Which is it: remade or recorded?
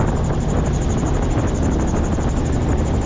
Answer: recorded